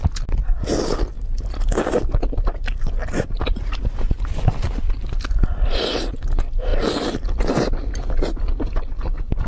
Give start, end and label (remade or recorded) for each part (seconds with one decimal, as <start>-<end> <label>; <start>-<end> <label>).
0.0-0.4 recorded; 0.4-1.0 remade; 1.0-3.0 recorded; 3.0-5.8 remade; 5.8-6.7 recorded; 6.7-7.5 remade; 7.5-9.5 recorded